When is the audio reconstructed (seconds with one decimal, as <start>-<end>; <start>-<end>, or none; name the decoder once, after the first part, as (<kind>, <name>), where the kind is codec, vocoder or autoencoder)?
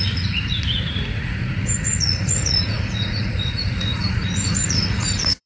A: 0.0-5.5 (vocoder, Vocos)